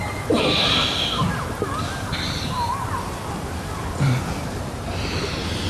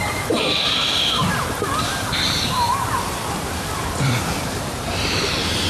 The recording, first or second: first